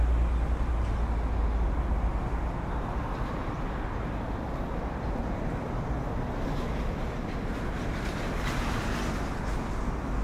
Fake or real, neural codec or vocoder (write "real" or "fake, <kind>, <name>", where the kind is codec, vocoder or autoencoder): real